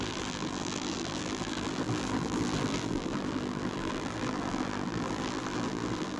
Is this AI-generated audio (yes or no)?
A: yes